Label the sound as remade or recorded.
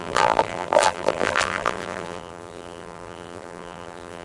remade